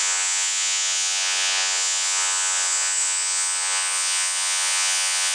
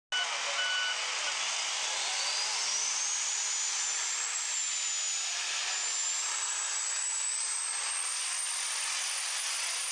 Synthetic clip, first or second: first